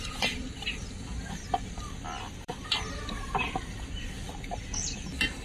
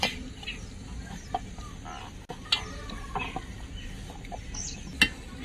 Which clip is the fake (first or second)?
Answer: first